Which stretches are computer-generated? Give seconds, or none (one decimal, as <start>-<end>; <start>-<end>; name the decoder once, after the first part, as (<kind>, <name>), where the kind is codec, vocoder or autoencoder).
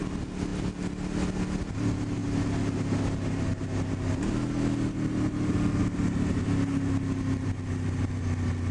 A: none